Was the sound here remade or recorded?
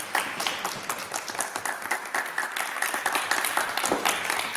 recorded